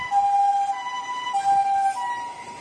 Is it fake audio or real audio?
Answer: real